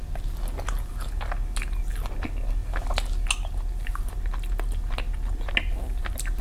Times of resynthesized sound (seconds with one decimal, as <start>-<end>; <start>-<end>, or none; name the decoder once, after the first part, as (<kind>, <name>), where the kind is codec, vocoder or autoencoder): none